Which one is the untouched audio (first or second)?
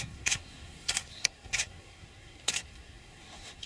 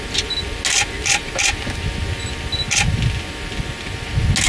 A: second